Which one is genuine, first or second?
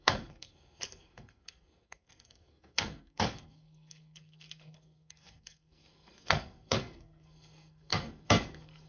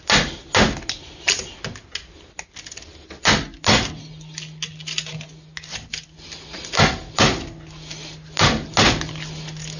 second